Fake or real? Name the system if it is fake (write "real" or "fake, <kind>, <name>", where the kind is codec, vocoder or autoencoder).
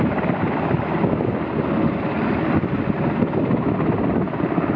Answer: real